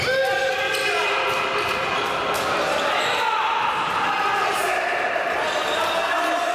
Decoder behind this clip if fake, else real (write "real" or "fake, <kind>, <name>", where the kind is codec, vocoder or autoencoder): real